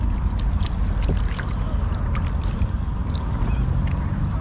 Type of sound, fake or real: real